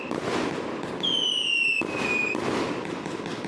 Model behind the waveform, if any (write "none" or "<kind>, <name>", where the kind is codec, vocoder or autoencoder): none